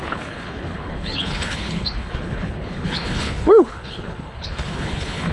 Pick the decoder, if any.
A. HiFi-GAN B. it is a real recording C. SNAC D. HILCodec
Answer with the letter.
D